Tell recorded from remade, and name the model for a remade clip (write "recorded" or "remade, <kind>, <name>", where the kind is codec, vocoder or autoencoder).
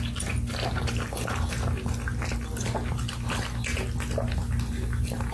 recorded